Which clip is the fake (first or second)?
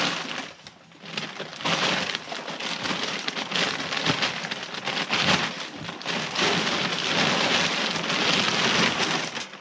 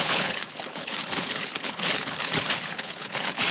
second